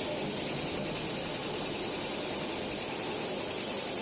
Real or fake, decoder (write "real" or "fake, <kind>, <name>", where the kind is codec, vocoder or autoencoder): real